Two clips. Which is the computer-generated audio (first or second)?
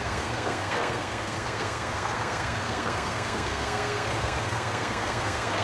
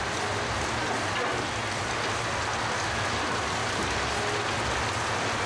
first